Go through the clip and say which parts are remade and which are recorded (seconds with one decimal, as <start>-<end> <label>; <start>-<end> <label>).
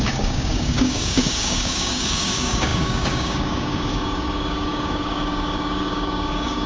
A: 0.0-6.7 remade